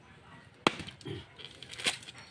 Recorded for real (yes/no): yes